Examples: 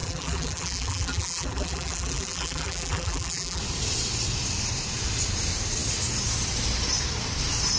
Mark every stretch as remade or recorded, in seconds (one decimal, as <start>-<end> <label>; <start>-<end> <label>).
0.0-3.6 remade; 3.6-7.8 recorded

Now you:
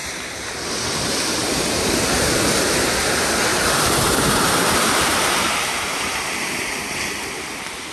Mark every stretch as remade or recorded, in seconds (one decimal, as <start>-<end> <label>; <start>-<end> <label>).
0.0-0.5 remade; 0.5-1.4 recorded; 1.4-3.0 remade; 3.0-3.5 recorded; 3.5-7.0 remade; 7.0-7.9 recorded

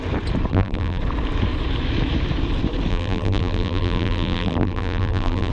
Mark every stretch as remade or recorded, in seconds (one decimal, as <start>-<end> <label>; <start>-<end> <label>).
0.0-0.5 recorded; 0.5-1.0 remade; 1.0-2.9 recorded; 2.9-5.5 remade

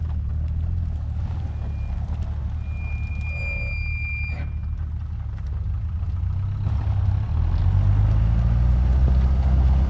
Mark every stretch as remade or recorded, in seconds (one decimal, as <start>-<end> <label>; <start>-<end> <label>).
0.0-9.9 recorded

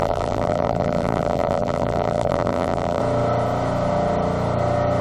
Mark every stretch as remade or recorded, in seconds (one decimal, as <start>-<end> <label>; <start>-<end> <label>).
0.0-3.0 remade; 3.0-5.0 recorded